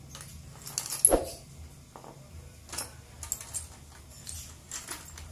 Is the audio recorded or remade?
recorded